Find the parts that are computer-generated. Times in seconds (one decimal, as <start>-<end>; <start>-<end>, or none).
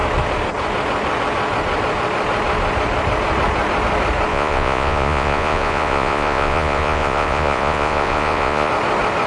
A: 4.3-8.7